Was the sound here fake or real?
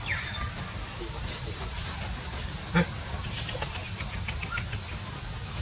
real